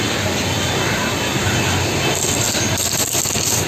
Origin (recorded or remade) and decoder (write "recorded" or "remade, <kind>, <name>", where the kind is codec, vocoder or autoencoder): recorded